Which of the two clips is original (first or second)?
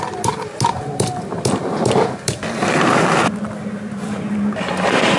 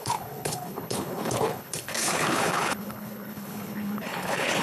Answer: first